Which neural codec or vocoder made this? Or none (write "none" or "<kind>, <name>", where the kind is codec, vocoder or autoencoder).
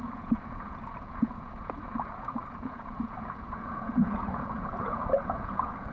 vocoder, Vocos